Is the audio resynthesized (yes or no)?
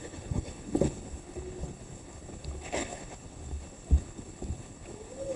yes